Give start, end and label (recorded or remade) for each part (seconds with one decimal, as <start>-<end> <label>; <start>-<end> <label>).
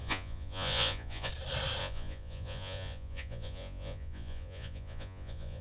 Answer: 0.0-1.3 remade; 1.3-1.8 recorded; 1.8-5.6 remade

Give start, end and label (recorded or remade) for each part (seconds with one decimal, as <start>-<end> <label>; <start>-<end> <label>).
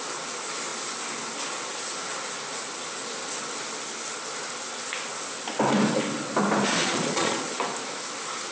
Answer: 0.0-6.7 recorded; 6.7-7.4 remade; 7.4-8.5 recorded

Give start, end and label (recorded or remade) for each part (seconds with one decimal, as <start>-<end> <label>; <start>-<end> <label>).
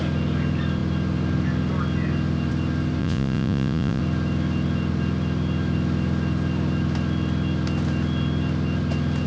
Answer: 0.0-3.0 recorded; 3.0-4.0 remade; 4.0-9.3 recorded